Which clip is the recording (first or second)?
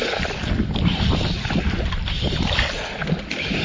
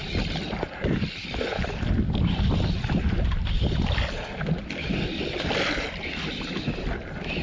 second